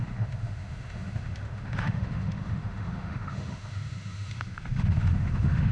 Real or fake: fake